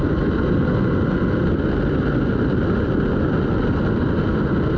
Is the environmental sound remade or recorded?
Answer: recorded